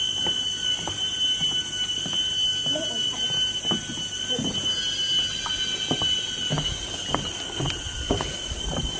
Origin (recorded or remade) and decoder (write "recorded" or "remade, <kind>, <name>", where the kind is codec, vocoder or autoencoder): recorded